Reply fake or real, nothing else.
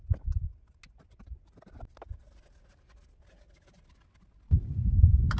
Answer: real